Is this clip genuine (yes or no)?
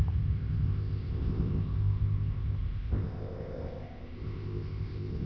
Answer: no